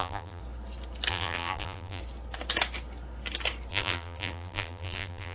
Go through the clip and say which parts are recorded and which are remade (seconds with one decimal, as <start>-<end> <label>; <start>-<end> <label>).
0.0-0.4 remade; 0.4-1.1 recorded; 1.1-2.0 remade; 2.0-3.7 recorded; 3.7-5.3 remade